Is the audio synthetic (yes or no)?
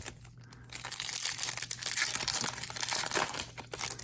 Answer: no